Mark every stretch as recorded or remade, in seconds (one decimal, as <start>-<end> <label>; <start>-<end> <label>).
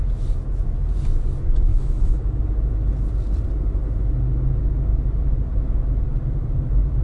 0.0-1.7 recorded; 1.7-2.4 remade; 2.4-7.0 recorded